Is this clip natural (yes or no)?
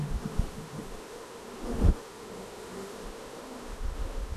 no